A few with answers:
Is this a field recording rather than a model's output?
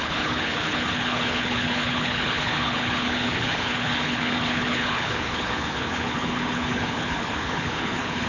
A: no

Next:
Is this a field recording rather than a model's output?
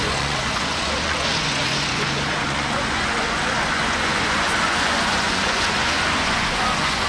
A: no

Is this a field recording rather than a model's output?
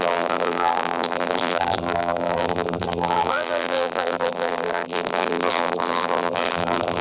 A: no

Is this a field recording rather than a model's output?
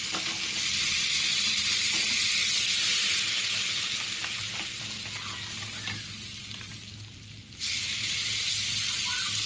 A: yes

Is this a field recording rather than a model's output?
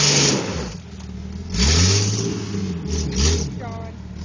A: yes